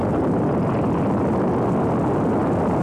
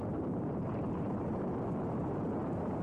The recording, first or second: first